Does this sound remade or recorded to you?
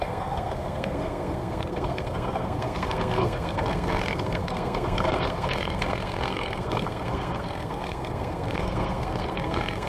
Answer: remade